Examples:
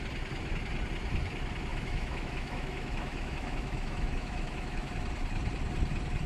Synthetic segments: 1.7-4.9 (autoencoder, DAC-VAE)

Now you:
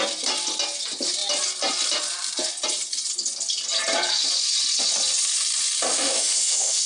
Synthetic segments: 5.9-6.9 (autoencoder, DAC-VAE)